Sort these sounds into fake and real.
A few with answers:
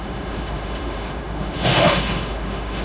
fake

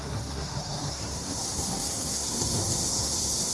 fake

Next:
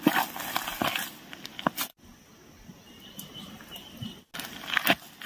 real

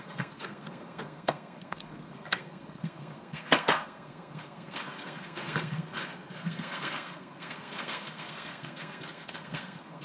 fake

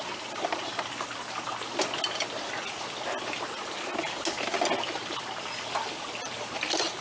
real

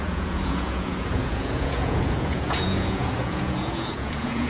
fake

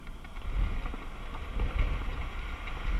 real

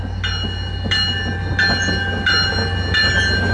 real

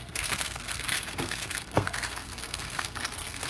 fake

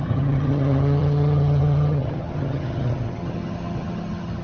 fake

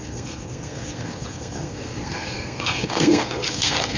fake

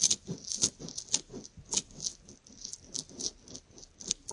real